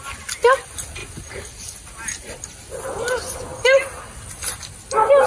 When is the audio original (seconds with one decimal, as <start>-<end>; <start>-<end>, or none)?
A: 0.0-5.3